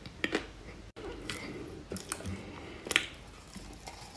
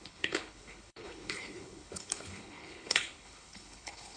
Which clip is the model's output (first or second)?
second